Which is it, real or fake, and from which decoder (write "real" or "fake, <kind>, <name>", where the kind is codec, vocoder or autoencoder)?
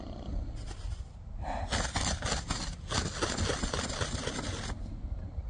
real